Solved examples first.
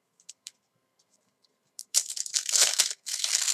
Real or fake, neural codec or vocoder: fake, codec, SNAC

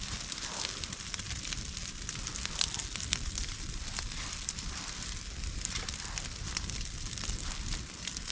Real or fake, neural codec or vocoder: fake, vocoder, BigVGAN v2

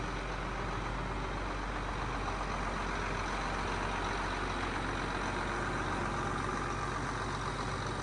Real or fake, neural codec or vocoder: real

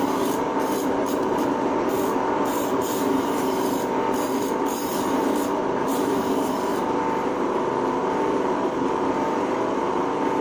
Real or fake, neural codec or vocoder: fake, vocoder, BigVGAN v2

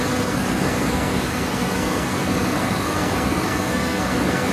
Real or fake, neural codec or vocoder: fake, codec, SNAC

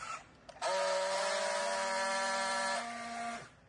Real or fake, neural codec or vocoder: real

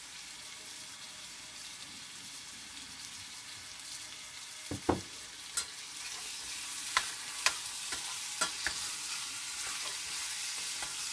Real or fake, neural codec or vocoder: real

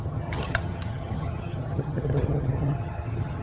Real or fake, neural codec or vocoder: fake, vocoder, HiFi-GAN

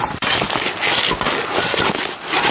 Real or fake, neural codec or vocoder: real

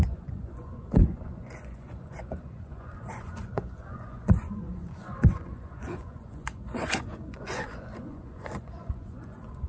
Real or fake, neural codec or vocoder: fake, vocoder, Vocos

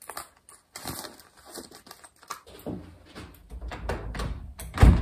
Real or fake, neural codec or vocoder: real